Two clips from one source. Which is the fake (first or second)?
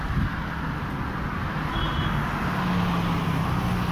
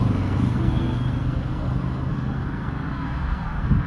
second